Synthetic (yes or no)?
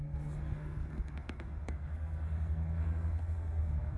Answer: yes